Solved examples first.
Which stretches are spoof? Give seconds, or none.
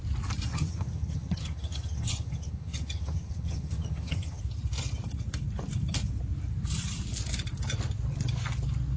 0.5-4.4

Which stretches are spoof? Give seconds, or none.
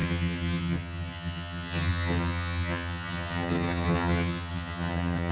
0.0-5.3